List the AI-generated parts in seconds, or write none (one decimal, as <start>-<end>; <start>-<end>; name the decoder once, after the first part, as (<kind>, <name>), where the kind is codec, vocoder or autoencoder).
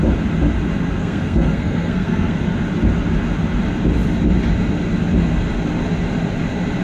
1.0-2.4 (codec, SNAC)